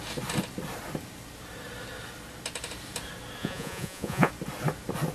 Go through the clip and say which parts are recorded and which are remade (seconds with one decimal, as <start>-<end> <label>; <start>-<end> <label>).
0.0-3.4 recorded; 3.4-4.3 remade; 4.3-5.1 recorded